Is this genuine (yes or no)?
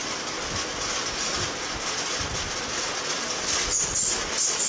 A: yes